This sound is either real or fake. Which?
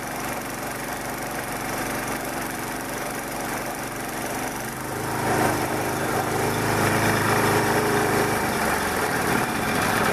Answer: fake